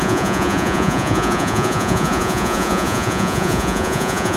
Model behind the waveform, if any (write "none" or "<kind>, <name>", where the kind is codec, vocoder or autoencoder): vocoder, Vocos